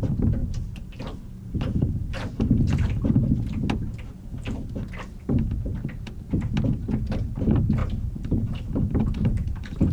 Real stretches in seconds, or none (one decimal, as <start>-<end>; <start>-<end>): 0.0-0.4; 3.1-7.8